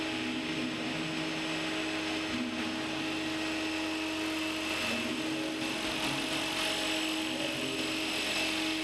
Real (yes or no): yes